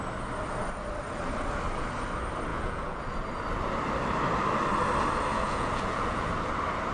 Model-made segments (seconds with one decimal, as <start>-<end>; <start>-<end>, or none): 2.5-3.0; 5.3-6.3